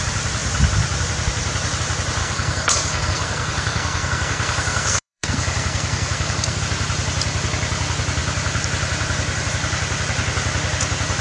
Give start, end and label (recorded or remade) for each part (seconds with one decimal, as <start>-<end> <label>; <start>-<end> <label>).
0.0-2.2 recorded; 2.2-6.6 remade; 6.6-11.2 recorded